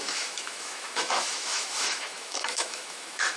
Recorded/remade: remade